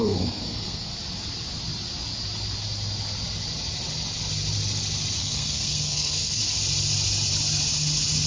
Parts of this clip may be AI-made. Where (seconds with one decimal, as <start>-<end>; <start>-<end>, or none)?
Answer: 0.0-0.9; 5.2-6.4